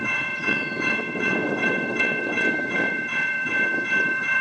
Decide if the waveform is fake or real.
fake